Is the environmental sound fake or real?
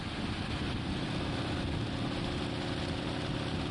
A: real